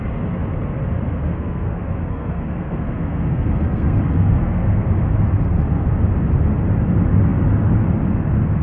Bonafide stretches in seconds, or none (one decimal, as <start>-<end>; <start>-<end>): 0.0-1.1; 4.9-8.6